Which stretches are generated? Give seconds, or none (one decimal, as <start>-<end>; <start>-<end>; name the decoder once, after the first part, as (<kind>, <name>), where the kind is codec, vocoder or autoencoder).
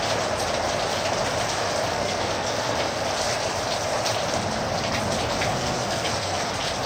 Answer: 1.9-3.0 (codec, SNAC); 5.5-6.5